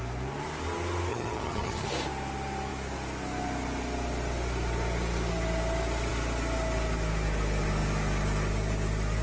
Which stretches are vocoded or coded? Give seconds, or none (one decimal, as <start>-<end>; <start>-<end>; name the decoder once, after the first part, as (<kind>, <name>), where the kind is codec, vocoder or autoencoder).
1.1-1.9 (vocoder, HiFi-GAN)